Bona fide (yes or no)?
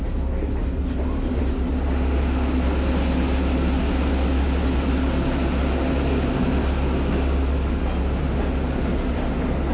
yes